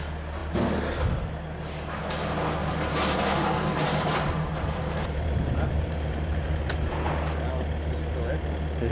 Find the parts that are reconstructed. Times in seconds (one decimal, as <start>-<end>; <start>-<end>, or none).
2.6-6.7